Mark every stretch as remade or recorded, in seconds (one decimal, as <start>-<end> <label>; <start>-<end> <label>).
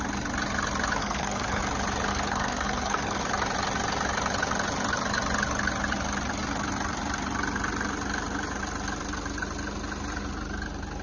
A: 0.0-1.0 recorded; 1.0-1.6 remade; 1.6-2.1 recorded; 2.1-3.2 remade; 3.2-11.0 recorded